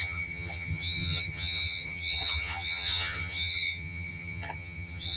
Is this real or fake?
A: fake